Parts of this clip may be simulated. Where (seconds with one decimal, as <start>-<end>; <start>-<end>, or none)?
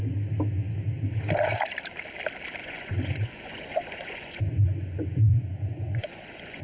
2.6-6.6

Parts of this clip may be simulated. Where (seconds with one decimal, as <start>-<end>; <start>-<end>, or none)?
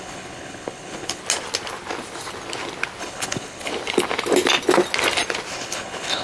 0.0-1.2; 3.0-3.7; 5.5-6.2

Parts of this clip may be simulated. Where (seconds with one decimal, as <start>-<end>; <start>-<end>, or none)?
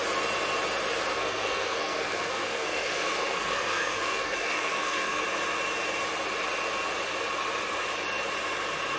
1.1-5.2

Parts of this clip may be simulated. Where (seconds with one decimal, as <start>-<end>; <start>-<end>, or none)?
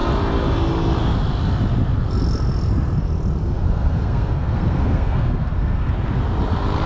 3.4-5.9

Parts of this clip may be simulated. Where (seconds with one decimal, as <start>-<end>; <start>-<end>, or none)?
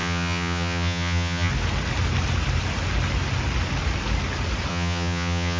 0.0-1.5; 4.7-5.6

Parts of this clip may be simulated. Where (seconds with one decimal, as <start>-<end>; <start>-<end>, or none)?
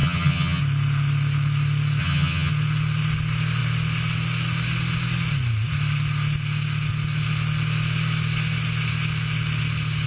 0.0-0.6; 2.0-2.5